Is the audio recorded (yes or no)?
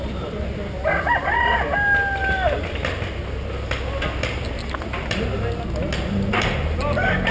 yes